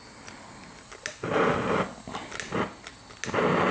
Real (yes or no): yes